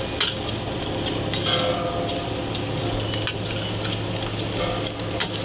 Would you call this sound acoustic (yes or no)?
yes